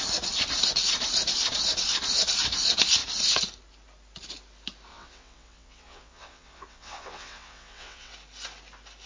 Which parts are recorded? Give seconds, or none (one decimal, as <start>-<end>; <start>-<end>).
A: 0.0-4.9; 8.1-9.1